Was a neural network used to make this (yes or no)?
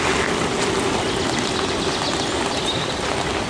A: no